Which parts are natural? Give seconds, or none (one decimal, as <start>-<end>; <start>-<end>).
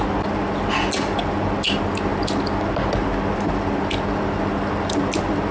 0.0-5.5